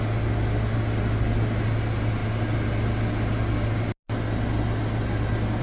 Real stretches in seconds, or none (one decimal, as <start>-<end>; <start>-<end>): 0.0-5.6

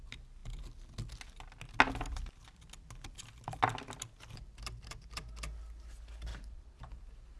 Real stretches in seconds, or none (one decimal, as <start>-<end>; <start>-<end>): 0.0-6.3; 6.9-7.4

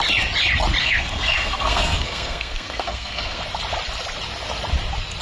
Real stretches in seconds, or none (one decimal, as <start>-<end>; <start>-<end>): 0.0-0.8; 3.4-5.2

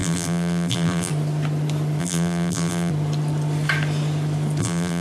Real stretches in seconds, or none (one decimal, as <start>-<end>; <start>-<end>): 1.1-2.0; 2.9-4.6

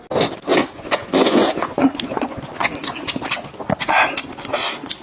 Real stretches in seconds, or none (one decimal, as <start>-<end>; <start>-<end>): 0.0-0.5; 3.1-5.0

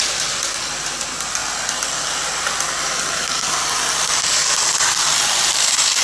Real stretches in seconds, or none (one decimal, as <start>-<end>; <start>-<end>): 0.0-6.0

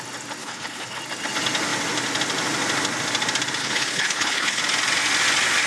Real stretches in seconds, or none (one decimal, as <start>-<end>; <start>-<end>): 0.0-0.4; 1.0-3.6; 4.6-5.7